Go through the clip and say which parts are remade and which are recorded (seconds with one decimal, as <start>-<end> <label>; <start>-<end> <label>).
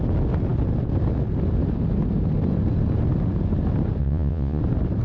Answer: 0.0-4.0 recorded; 4.0-4.6 remade; 4.6-5.0 recorded